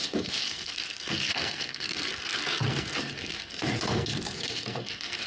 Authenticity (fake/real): fake